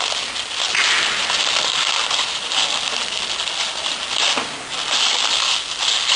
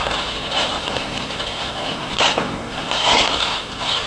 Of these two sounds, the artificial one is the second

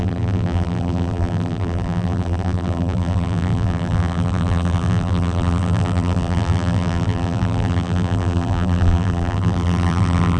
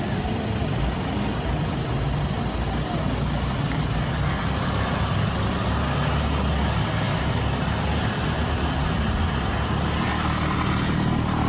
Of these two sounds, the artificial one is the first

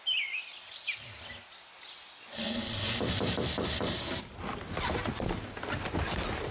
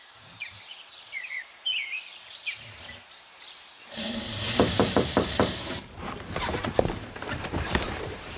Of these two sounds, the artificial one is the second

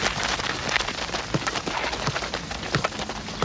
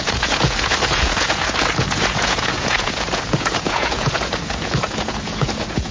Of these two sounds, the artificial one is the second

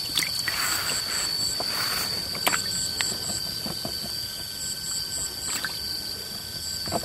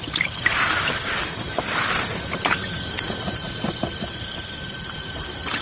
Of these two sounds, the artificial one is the second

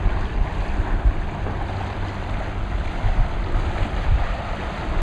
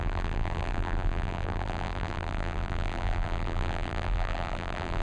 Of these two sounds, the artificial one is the second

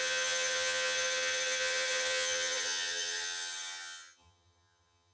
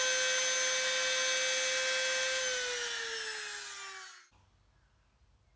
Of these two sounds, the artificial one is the first